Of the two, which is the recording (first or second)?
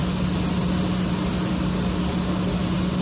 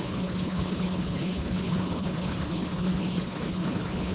first